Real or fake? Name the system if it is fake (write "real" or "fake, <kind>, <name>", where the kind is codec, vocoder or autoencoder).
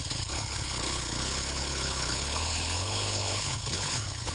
fake, codec, HILCodec